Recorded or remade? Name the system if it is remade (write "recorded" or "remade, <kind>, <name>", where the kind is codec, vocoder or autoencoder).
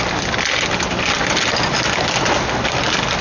recorded